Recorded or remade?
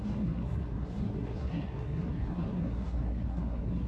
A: remade